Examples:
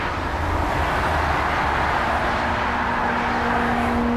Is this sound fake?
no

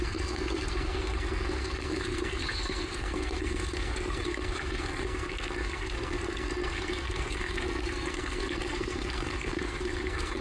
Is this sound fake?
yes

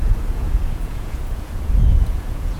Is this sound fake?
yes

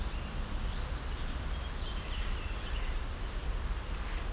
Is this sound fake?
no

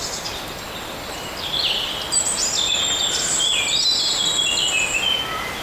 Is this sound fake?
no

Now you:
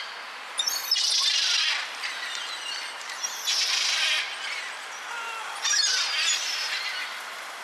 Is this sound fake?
no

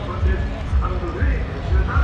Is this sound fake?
no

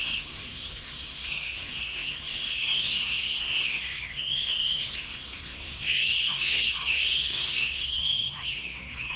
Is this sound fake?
yes